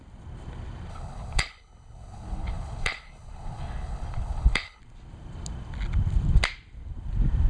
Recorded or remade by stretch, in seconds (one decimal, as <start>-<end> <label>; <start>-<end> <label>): 0.0-0.9 recorded; 0.9-4.8 remade; 4.8-7.5 recorded